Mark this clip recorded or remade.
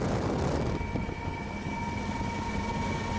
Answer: recorded